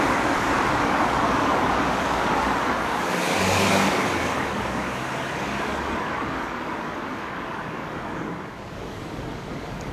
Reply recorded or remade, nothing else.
remade